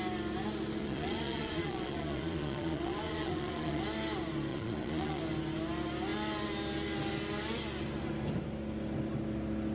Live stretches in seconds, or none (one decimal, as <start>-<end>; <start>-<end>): 0.0-0.8; 3.8-4.5; 5.2-9.7